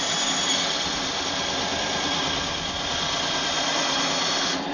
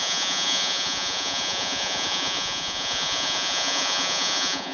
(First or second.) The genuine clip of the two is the first